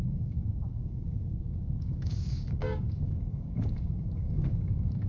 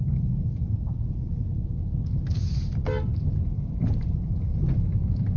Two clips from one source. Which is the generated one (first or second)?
first